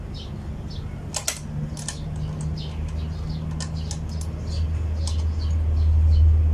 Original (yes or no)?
yes